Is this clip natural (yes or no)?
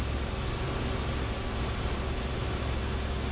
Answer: yes